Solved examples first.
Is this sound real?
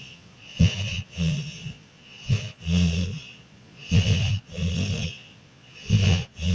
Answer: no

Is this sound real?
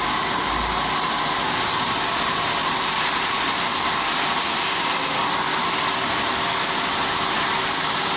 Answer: yes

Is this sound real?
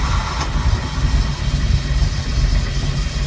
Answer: yes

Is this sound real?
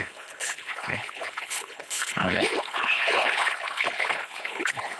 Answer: no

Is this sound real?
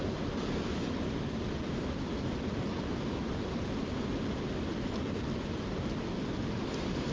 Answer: yes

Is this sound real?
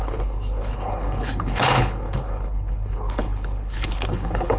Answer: no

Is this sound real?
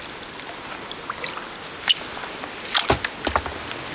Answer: yes